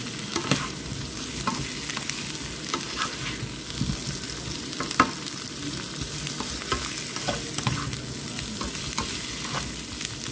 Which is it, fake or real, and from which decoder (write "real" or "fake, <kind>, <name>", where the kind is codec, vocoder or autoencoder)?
real